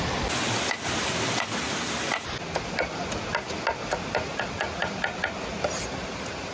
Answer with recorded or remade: recorded